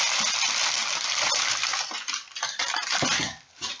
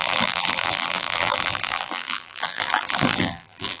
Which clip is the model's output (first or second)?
second